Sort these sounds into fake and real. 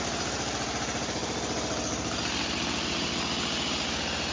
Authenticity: real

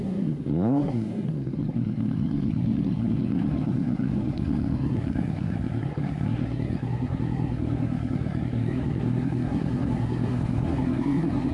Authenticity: fake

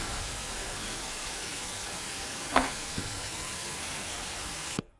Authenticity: fake